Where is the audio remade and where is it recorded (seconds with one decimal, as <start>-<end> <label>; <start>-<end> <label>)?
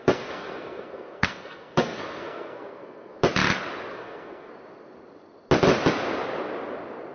0.0-3.2 remade; 3.2-3.9 recorded; 3.9-4.5 remade; 4.5-7.1 recorded